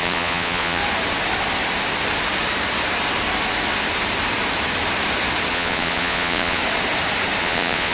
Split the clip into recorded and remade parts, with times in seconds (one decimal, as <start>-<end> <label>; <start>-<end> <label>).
0.0-0.8 remade; 0.8-5.5 recorded; 5.5-6.6 remade; 6.6-7.4 recorded; 7.4-7.9 remade